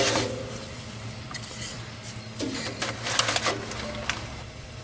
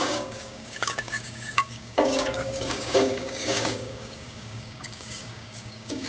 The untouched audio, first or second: first